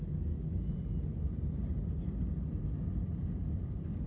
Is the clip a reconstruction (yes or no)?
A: no